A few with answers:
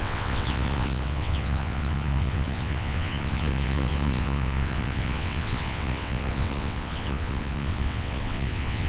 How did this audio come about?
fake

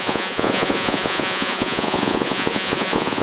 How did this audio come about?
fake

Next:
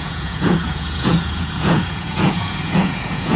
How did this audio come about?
fake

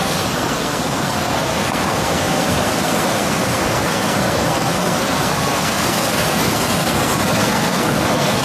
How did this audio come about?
fake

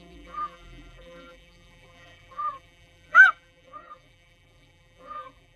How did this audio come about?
fake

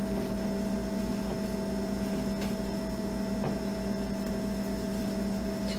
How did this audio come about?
real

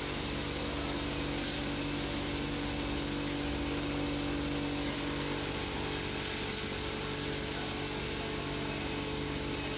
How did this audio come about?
real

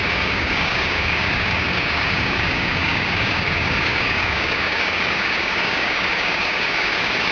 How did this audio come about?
fake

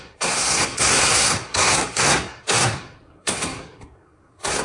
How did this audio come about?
fake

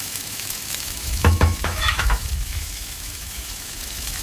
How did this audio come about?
fake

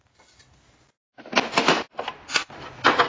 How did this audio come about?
real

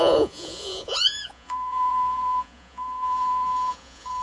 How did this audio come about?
fake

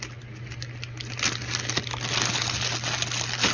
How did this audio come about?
real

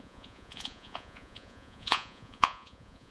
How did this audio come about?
fake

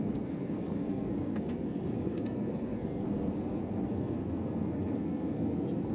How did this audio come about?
fake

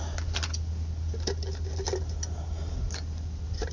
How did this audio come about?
real